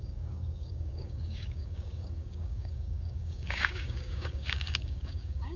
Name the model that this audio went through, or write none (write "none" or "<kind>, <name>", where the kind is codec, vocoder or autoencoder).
codec, DAC